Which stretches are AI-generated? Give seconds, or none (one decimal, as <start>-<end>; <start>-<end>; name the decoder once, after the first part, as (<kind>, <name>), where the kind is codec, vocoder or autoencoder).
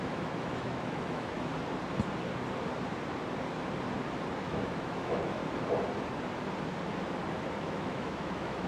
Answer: 0.0-1.5 (autoencoder, DAC-VAE); 4.3-5.4; 7.5-8.7